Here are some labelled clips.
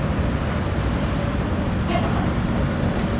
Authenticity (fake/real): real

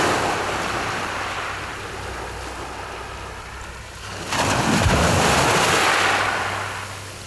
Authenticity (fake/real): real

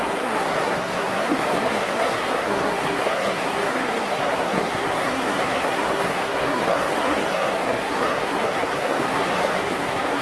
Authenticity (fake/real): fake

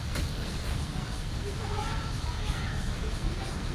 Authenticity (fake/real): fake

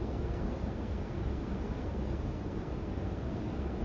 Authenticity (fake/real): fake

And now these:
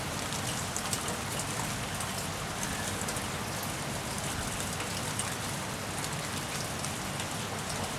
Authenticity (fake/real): real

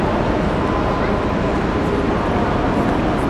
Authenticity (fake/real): real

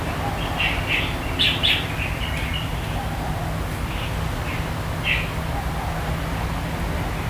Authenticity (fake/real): real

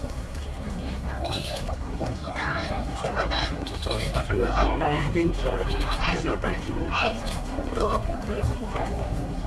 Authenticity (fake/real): fake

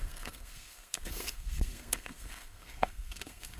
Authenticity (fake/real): fake